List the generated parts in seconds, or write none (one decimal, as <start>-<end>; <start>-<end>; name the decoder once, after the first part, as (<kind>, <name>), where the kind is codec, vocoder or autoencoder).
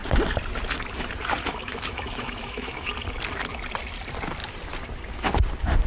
1.5-2.9 (autoencoder, DAC-VAE)